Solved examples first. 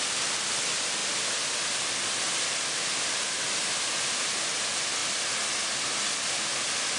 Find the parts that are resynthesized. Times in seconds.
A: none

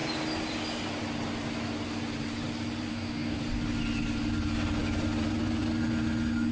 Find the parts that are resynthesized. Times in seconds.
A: 2.9-3.4 (codec, DAC)

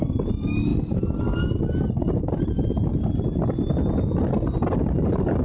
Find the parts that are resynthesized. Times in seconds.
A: none